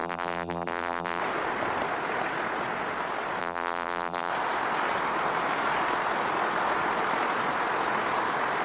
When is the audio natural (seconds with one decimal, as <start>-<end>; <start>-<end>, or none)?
1.2-3.4; 4.3-8.6